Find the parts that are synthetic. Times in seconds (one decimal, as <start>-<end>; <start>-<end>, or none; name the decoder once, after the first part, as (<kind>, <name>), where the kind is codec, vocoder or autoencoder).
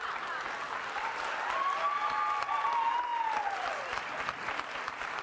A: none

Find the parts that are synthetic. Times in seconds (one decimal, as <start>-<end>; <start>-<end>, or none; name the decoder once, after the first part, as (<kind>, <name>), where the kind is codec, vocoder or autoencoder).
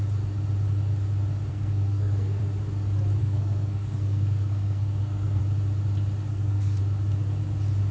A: 1.5-2.4 (codec, SNAC); 3.2-5.4; 6.3-6.8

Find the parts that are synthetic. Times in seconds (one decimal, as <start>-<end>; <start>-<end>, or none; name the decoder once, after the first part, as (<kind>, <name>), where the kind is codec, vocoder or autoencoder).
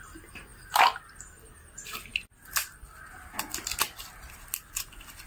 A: none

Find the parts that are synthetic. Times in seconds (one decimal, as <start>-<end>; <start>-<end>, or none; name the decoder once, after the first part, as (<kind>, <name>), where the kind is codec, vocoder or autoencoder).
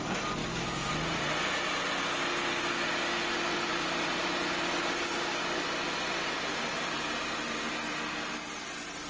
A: 0.4-0.9 (autoencoder, DAC-VAE)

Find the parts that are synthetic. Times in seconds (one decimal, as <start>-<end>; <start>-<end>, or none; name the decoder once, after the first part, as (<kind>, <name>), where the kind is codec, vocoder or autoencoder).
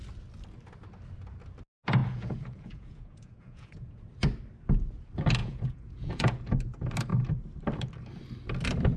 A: 2.0-4.0 (vocoder, Vocos); 5.4-6.4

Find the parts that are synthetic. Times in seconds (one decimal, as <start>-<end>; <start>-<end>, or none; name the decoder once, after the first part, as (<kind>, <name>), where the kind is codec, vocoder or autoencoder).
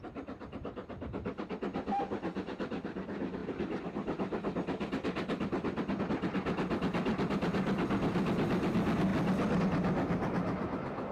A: none